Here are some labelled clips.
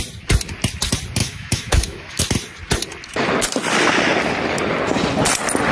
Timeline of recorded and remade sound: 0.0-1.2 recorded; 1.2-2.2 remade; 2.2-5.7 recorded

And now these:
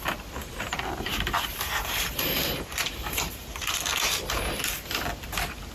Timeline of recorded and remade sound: 0.0-0.4 recorded; 0.4-3.8 remade; 3.8-5.7 recorded

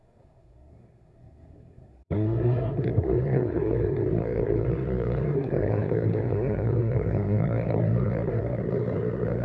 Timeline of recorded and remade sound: 0.0-9.4 remade